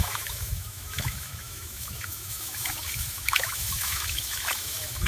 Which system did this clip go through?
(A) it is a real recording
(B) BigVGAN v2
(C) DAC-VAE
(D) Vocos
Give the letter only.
C